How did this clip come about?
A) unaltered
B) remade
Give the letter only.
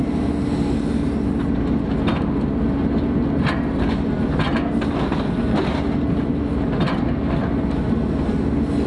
A